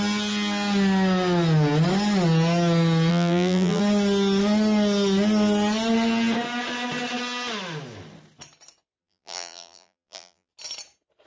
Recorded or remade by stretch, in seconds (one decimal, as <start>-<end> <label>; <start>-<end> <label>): 0.0-3.1 recorded; 3.1-3.8 remade; 3.8-9.0 recorded; 9.0-10.5 remade; 10.5-11.3 recorded